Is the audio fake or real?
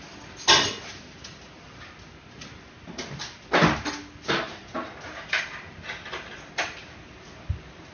real